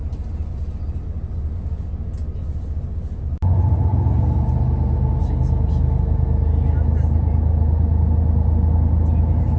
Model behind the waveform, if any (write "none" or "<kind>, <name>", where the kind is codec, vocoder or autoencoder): none